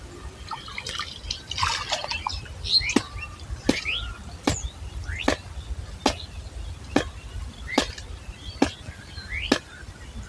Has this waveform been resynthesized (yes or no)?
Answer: no